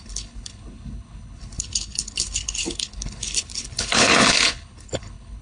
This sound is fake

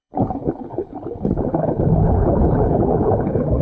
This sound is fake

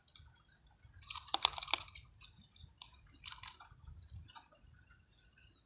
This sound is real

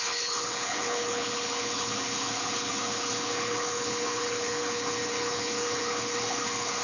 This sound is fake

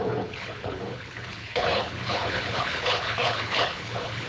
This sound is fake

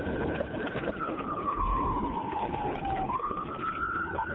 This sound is fake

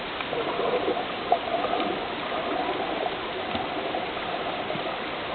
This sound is real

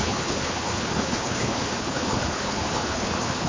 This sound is fake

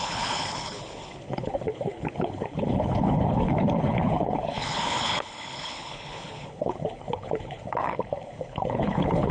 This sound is fake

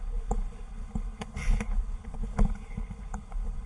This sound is fake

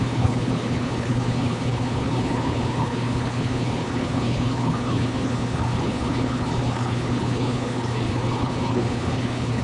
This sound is fake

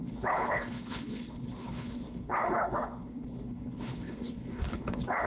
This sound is fake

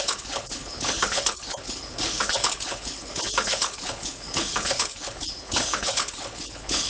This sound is fake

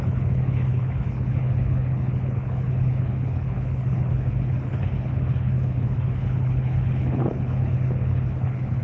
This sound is fake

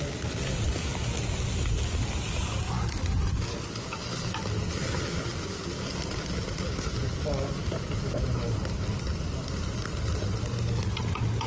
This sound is real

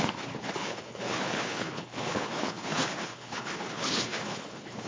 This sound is fake